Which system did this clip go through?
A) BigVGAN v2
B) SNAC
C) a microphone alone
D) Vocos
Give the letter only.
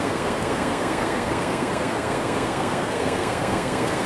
B